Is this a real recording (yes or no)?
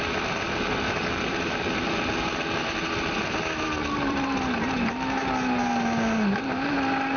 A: yes